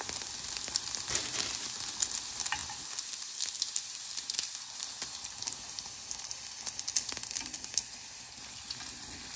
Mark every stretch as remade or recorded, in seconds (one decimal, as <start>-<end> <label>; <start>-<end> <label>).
0.0-9.4 recorded